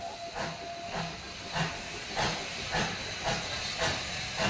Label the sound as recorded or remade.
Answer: recorded